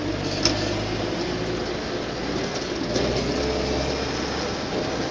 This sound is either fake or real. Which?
real